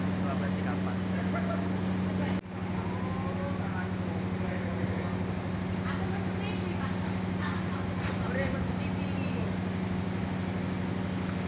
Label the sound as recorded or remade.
recorded